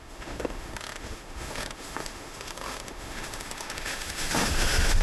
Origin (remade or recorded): remade